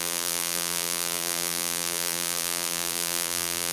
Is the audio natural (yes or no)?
no